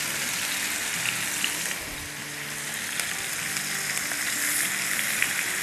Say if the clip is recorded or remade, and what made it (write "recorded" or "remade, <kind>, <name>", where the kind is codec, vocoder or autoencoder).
recorded